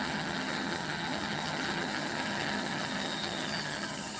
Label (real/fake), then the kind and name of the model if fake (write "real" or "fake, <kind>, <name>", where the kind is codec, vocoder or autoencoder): fake, vocoder, HiFi-GAN